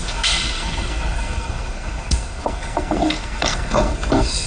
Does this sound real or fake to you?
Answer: fake